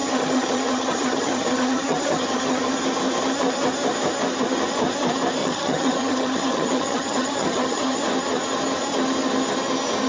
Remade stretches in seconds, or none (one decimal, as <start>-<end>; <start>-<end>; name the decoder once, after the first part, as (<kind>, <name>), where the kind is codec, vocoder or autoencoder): 0.0-2.7 (vocoder, HiFi-GAN); 5.4-8.0